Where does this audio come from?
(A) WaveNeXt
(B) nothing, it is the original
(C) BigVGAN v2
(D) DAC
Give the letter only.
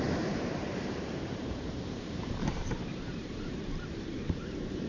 C